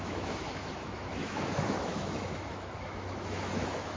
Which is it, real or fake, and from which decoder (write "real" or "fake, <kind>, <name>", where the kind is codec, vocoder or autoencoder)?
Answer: fake, autoencoder, DAC-VAE